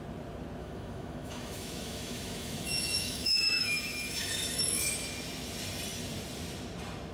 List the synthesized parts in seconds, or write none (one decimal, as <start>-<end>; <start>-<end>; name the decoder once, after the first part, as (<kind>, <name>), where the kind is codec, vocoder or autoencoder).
0.6-4.9 (autoencoder, DAC-VAE)